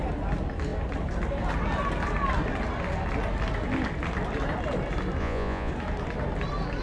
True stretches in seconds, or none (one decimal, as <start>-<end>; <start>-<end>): 0.0-5.2; 5.7-6.8